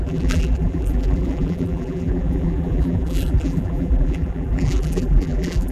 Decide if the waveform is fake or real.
fake